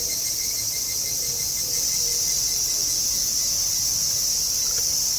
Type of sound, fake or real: real